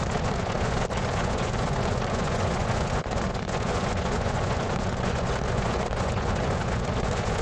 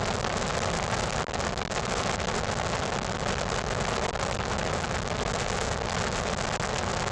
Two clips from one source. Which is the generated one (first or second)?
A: first